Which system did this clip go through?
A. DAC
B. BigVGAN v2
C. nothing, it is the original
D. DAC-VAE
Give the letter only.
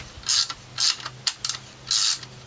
C